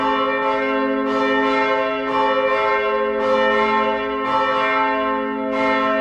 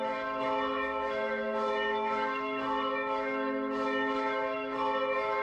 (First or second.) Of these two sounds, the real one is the first